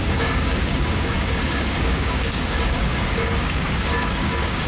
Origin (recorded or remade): remade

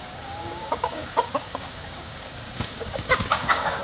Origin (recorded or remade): remade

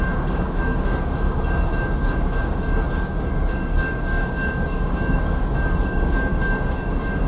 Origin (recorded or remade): remade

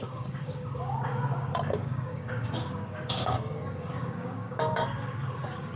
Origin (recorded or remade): remade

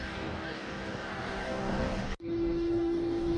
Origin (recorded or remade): remade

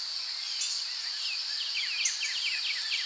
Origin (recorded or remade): recorded